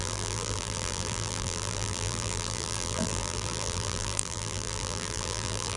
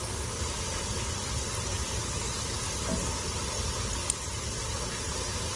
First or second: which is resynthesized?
first